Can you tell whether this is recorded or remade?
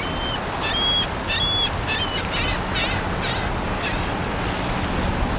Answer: recorded